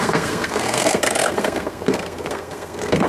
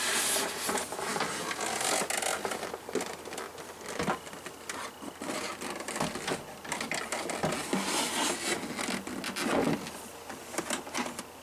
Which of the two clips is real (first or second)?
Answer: second